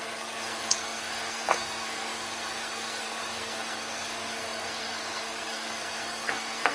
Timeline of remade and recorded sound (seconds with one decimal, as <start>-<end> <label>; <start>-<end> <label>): 0.0-6.7 remade

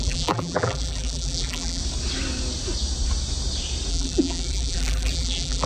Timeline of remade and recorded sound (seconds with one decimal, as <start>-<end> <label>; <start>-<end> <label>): 0.0-1.8 remade; 1.8-3.9 recorded; 3.9-5.7 remade

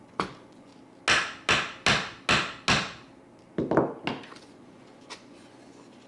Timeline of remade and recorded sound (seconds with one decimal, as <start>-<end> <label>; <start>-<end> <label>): 0.0-0.7 remade; 0.7-4.4 recorded; 4.4-6.1 remade

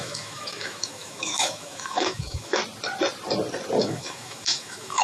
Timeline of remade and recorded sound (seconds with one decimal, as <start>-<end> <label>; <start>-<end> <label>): 0.0-2.6 remade; 2.6-3.8 recorded; 3.8-5.0 remade

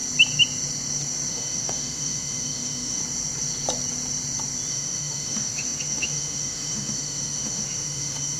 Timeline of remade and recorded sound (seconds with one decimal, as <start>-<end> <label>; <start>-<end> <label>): 0.0-1.3 recorded; 1.3-3.0 remade; 3.0-4.7 recorded; 4.7-8.4 remade

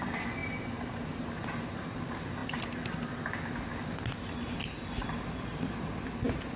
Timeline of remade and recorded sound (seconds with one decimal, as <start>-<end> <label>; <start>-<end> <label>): 0.0-6.6 recorded

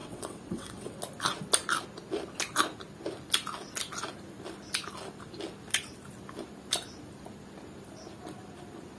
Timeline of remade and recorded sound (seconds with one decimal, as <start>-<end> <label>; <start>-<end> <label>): 0.0-1.0 remade; 1.0-9.0 recorded